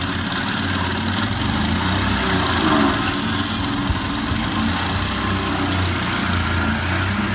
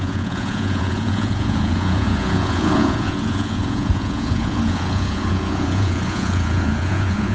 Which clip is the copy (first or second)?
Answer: second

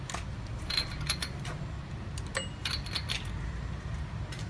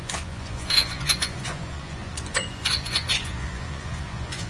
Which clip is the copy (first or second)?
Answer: second